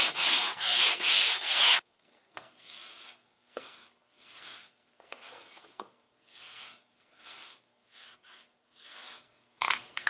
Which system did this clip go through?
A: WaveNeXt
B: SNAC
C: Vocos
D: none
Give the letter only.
B